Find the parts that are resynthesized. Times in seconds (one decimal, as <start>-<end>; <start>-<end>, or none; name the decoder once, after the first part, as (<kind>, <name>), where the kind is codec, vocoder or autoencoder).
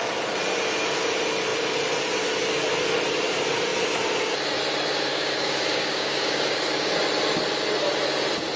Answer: 5.1-7.0 (codec, DAC)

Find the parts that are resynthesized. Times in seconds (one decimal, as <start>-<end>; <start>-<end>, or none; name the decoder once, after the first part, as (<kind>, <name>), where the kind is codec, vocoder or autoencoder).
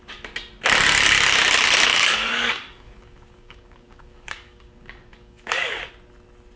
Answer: 1.9-5.9 (codec, DAC)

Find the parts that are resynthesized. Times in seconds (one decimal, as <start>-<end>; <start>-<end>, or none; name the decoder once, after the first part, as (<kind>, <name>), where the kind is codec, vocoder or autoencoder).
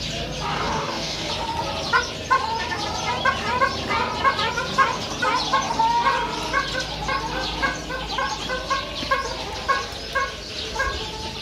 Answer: 0.5-1.3 (codec, DAC)